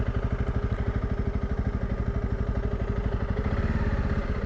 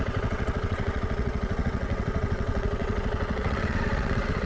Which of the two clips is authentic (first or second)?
first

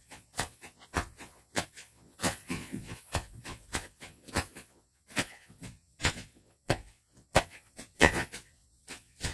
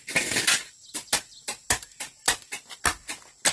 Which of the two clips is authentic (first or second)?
second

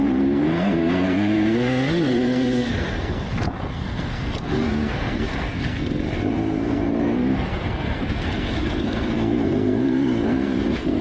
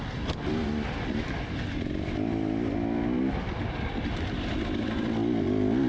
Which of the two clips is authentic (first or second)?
second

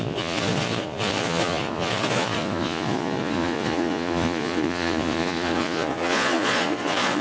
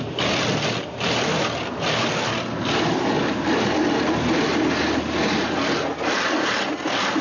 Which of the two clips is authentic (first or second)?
second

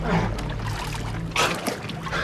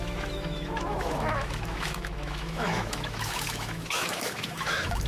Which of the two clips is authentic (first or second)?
first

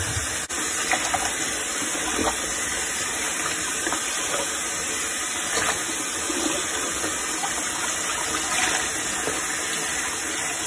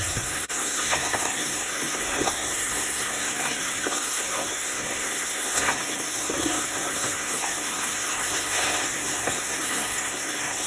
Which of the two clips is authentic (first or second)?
first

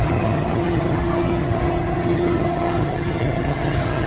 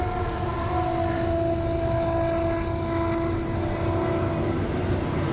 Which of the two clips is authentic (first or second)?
second